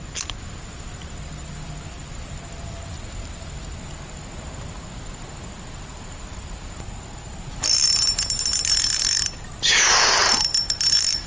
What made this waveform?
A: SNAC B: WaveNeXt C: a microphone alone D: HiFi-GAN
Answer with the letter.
C